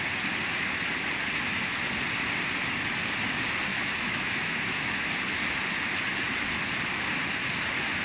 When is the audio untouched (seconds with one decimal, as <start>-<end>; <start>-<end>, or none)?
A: 0.0-3.7; 5.1-8.0